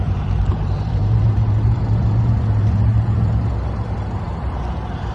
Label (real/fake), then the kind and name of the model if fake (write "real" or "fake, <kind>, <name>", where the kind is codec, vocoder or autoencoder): fake, vocoder, BigVGAN v2